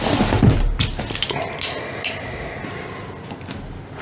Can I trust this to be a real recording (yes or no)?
yes